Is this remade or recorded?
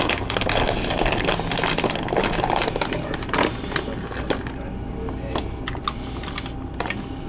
recorded